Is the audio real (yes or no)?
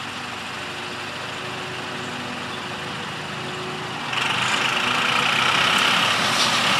yes